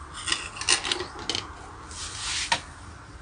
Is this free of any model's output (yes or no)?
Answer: yes